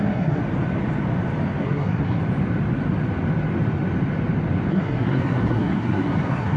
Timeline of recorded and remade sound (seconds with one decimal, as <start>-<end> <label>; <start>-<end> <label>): 0.0-0.4 remade; 0.4-1.6 recorded; 1.6-2.2 remade; 2.2-4.7 recorded; 4.7-6.6 remade